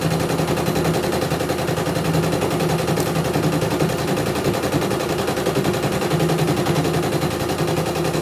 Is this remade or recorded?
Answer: recorded